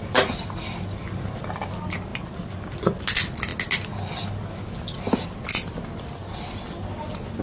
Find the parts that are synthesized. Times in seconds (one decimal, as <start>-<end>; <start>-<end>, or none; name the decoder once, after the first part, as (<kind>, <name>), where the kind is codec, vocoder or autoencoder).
none